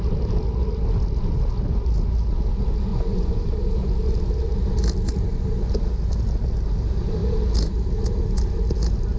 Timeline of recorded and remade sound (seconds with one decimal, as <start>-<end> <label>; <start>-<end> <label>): 0.0-2.9 recorded; 2.9-3.5 remade; 3.5-9.2 recorded